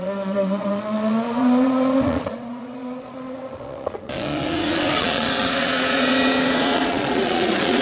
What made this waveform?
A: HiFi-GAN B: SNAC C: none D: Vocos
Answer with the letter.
D